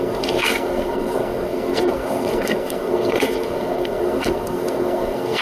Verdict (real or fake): fake